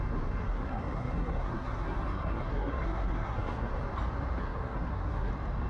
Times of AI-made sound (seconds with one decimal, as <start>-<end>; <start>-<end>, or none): 0.4-3.7; 4.4-5.3

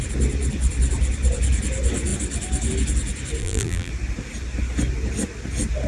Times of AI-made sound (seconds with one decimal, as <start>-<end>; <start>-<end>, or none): 3.4-3.9